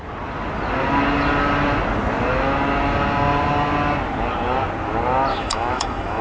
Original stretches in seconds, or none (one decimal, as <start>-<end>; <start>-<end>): 0.0-5.3

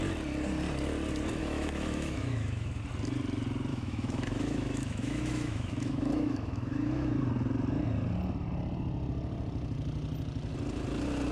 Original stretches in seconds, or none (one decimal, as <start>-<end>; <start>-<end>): 0.0-1.4; 2.8-3.7; 7.1-11.3